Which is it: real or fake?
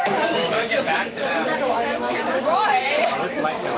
fake